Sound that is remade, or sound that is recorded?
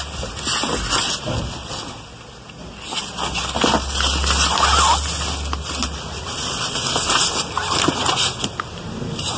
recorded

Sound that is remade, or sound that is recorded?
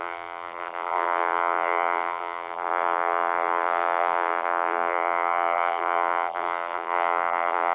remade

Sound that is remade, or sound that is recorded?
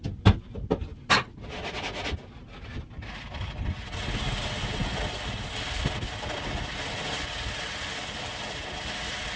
recorded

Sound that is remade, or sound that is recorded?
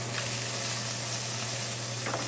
recorded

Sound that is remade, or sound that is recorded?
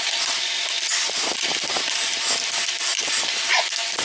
recorded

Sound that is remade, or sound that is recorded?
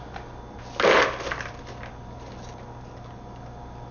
recorded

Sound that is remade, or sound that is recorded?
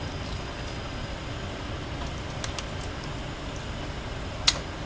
recorded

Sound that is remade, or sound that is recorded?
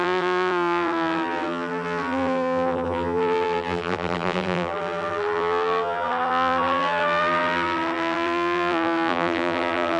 remade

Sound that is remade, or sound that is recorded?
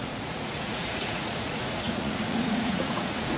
remade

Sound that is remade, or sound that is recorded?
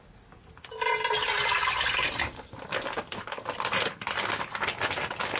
recorded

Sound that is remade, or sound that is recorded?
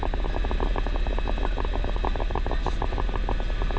recorded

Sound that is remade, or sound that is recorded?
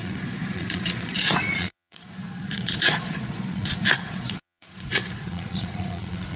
remade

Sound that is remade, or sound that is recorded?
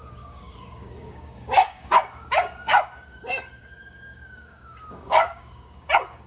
remade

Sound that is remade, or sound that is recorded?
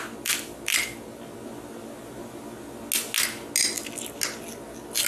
recorded